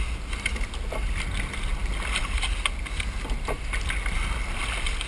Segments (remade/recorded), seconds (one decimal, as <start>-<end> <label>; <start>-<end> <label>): 0.0-5.1 recorded